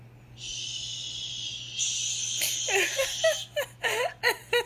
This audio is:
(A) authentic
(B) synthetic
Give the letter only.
A